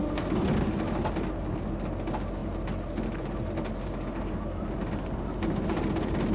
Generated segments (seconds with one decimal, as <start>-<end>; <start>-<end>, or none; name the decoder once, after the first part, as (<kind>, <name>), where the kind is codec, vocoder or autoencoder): none